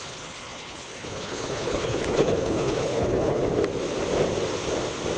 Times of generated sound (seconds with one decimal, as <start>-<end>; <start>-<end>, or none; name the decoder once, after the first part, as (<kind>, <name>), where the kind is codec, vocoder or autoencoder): 0.0-3.4 (codec, HILCodec)